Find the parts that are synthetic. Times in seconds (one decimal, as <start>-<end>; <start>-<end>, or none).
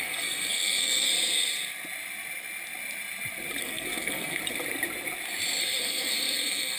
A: 0.0-1.1; 3.6-4.4; 5.6-6.8